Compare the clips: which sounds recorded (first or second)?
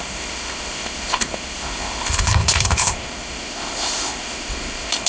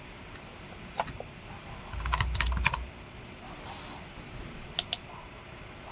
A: second